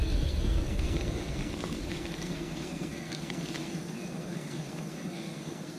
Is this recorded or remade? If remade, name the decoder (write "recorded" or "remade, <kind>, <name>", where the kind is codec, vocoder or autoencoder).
remade, codec, SNAC